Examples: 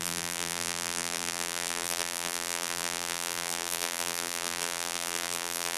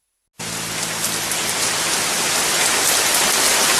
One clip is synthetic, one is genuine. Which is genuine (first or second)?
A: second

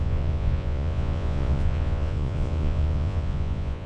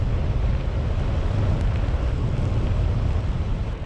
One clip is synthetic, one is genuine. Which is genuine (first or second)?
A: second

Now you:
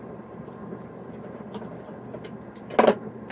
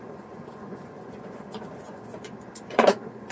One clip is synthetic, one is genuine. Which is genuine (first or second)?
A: first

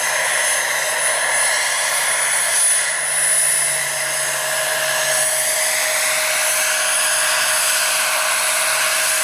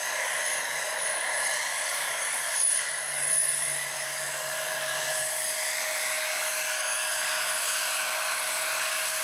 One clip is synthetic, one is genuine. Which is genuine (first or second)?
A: first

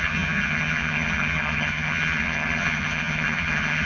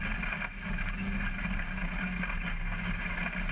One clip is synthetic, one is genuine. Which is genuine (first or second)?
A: second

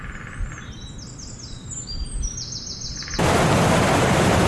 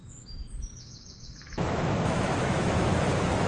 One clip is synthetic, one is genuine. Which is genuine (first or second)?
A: first